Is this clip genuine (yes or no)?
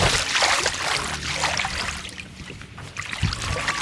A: yes